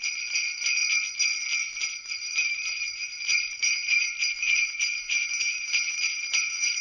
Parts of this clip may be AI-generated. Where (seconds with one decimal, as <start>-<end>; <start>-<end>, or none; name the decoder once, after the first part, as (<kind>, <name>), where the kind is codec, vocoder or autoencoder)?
2.2-4.1 (vocoder, BigVGAN v2); 4.9-6.8